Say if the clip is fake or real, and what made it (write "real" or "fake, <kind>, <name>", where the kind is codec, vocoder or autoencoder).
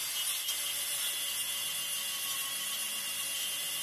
real